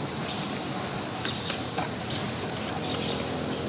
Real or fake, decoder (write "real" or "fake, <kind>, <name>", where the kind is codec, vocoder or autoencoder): real